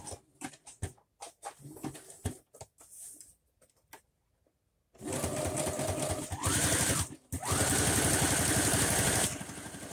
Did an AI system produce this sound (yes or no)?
no